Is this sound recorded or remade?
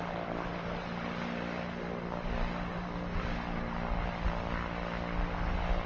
recorded